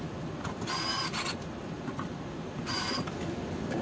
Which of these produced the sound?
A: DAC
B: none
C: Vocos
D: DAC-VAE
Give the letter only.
B